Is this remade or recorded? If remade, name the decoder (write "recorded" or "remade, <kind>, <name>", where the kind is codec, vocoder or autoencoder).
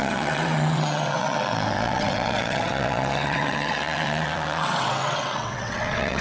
remade, vocoder, WaveNeXt